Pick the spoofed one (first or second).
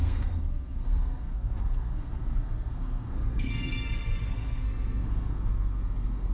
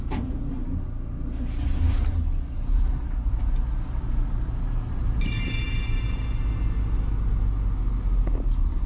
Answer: first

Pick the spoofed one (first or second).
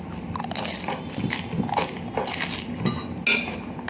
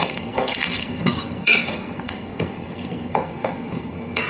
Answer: second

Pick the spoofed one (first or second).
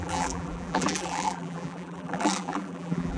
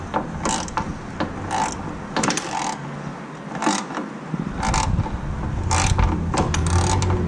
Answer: first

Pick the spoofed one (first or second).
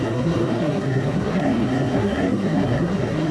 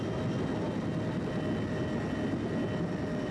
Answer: first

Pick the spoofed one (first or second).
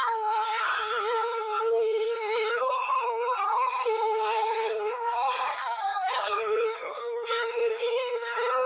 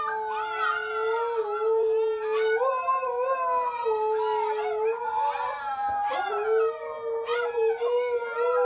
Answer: first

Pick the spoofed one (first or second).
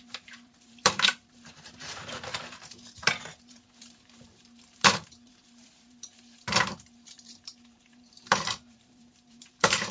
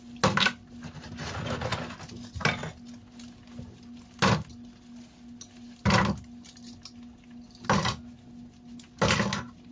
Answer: first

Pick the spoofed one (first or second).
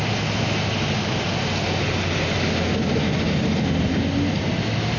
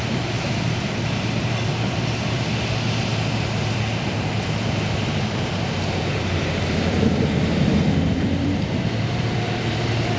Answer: second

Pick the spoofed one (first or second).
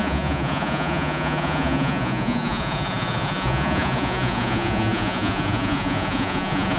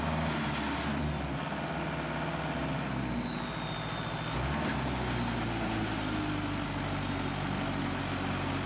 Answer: first